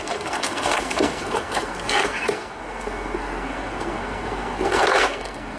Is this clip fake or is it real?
fake